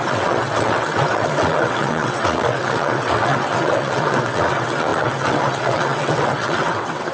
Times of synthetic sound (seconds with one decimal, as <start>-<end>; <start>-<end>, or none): 0.0-7.1